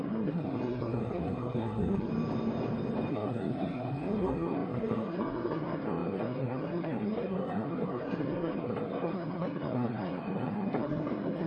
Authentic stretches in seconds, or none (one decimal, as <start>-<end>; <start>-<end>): 2.1-3.1